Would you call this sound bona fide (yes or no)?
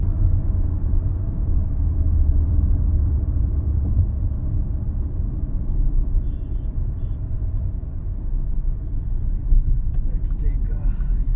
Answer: no